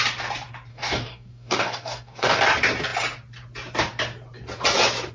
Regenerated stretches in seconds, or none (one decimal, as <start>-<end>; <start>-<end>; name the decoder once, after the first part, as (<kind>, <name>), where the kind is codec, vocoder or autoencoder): 0.7-2.4 (codec, DAC)